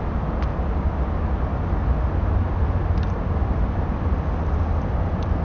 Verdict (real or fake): real